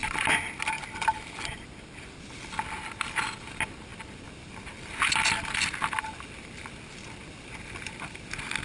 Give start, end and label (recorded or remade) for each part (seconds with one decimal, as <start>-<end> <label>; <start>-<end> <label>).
0.0-8.6 recorded